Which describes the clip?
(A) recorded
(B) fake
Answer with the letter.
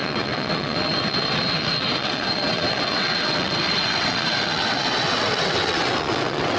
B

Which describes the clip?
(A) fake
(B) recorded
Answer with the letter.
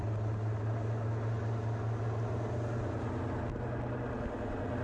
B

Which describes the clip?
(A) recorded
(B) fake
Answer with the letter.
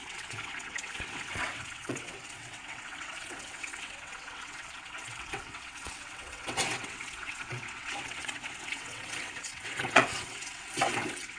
B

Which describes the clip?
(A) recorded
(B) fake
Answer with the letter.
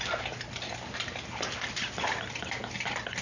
A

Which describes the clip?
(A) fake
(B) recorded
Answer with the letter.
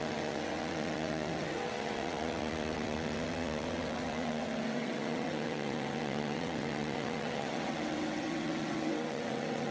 A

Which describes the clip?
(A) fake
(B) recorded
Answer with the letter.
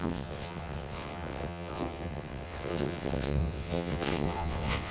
A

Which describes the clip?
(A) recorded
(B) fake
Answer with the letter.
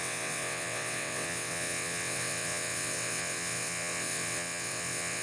B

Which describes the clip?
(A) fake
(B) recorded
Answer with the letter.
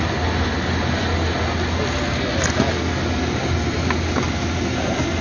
B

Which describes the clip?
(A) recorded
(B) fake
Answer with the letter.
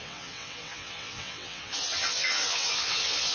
B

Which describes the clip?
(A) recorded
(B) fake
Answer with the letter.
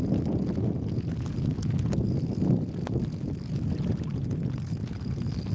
A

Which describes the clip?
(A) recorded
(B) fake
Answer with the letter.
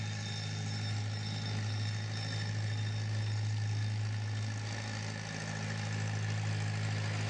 A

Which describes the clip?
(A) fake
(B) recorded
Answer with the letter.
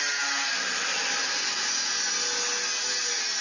B